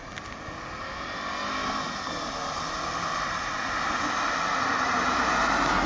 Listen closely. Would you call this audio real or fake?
real